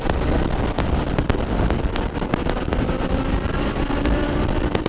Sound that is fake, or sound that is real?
fake